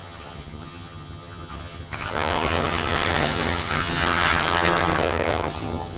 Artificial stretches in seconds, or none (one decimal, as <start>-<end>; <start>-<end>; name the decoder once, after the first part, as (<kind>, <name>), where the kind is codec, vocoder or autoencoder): 0.0-6.0 (vocoder, HiFi-GAN)